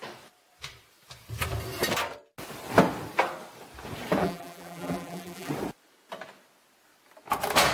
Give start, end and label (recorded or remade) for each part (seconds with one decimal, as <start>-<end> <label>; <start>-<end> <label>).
0.0-4.2 recorded; 4.2-5.5 remade; 5.5-7.7 recorded